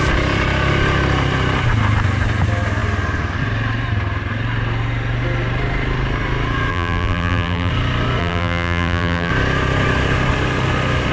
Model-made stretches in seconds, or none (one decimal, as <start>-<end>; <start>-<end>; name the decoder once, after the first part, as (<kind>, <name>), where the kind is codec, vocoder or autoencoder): 6.7-7.7 (vocoder, BigVGAN v2); 8.2-9.3